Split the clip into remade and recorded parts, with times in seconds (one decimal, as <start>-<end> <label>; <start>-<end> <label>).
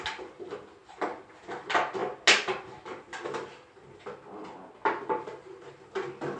0.0-6.4 recorded